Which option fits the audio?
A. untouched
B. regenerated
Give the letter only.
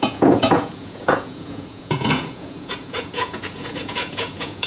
B